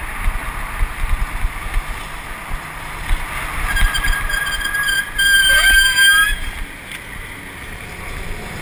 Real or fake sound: real